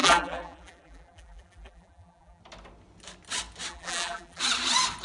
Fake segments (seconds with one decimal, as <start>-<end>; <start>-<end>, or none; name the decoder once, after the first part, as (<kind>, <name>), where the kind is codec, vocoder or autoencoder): 0.0-2.4 (vocoder, BigVGAN v2); 3.7-4.4